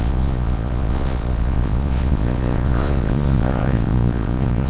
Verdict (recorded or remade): remade